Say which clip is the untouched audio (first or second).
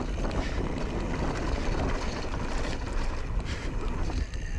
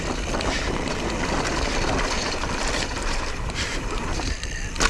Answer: first